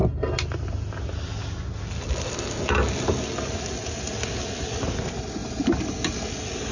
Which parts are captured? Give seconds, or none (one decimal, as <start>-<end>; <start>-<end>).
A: 0.0-5.4; 5.9-6.7